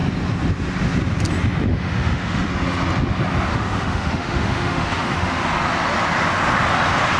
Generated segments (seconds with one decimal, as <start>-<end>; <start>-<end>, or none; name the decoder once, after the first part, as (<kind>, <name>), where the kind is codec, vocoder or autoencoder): 1.7-2.5 (autoencoder, DAC-VAE); 3.5-5.4